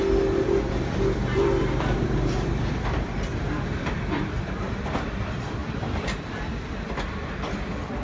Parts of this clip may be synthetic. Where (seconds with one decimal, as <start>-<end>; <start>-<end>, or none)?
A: 0.6-8.0